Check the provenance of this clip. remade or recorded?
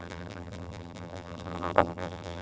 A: remade